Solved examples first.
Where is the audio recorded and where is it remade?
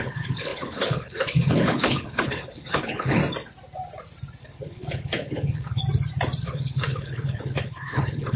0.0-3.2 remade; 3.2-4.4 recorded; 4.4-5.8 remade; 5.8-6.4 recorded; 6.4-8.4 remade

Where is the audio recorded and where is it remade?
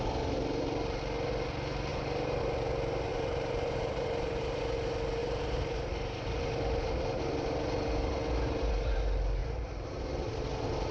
0.0-1.9 recorded; 1.9-2.4 remade; 2.4-3.1 recorded; 3.1-4.6 remade; 4.6-5.2 recorded; 5.2-7.2 remade; 7.2-9.4 recorded; 9.4-10.0 remade; 10.0-10.9 recorded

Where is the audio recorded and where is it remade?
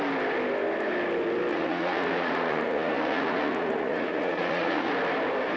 0.0-1.5 recorded; 1.5-4.9 remade; 4.9-5.6 recorded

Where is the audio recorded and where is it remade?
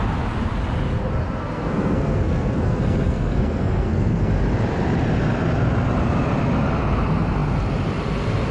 0.0-1.4 recorded; 1.4-4.3 remade; 4.3-8.5 recorded